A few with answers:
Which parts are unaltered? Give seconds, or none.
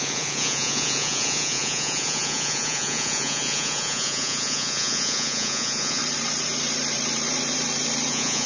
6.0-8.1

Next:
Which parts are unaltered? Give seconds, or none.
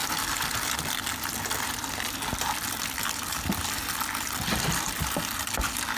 0.0-6.0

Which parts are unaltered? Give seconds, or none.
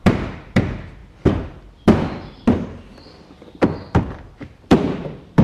none